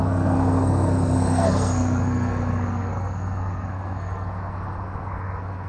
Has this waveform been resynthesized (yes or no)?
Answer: yes